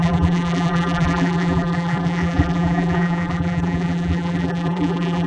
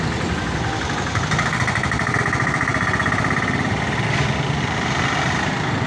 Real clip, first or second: second